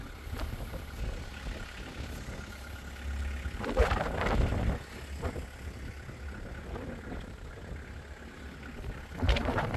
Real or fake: real